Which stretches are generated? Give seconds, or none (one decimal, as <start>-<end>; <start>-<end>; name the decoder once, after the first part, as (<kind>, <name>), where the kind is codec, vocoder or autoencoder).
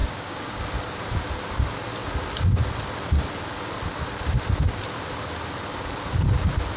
0.0-0.6 (codec, DAC)